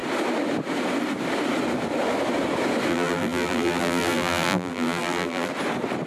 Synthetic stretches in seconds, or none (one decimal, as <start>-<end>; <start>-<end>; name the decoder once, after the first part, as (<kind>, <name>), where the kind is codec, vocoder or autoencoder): 2.9-5.5 (vocoder, BigVGAN v2)